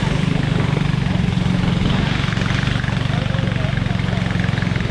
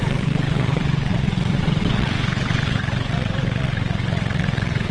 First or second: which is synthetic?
second